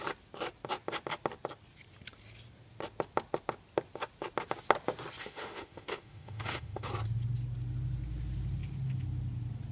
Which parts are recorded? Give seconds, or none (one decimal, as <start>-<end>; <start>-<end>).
0.0-5.2; 6.9-9.7